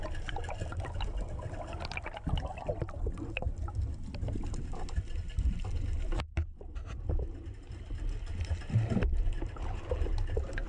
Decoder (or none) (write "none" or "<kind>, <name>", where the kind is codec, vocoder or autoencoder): none